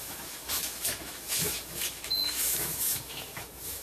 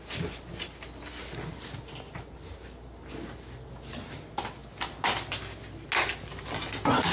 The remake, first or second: first